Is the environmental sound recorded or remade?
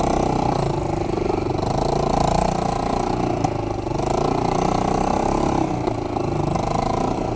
recorded